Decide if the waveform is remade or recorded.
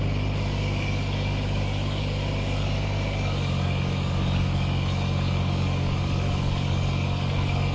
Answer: remade